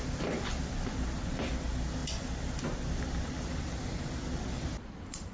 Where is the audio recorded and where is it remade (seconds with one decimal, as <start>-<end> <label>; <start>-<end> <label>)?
0.0-5.3 remade